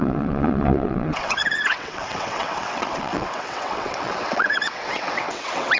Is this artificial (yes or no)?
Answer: yes